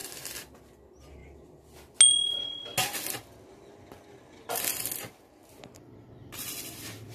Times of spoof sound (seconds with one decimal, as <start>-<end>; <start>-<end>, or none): 0.0-0.6